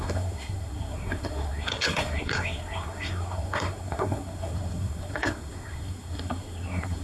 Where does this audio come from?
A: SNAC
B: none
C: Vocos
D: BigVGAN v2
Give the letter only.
A